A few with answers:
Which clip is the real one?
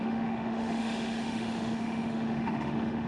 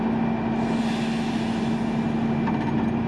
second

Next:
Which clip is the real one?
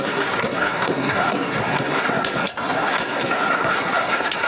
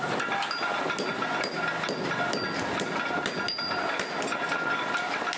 second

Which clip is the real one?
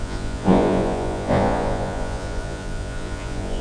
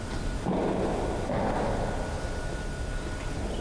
second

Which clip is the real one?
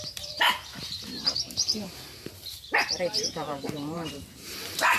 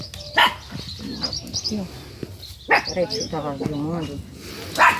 second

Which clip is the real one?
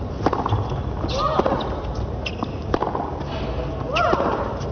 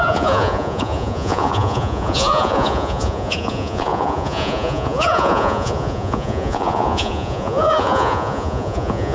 first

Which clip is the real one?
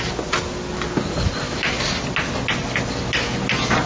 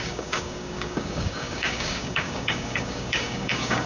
first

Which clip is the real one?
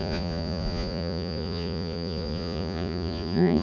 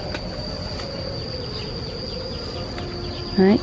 second